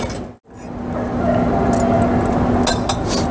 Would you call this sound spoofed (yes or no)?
no